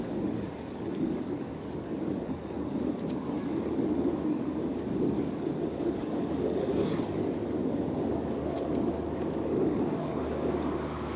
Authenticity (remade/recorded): remade